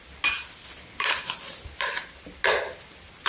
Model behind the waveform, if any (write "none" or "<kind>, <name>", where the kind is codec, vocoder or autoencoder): none